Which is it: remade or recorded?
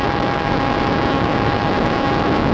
remade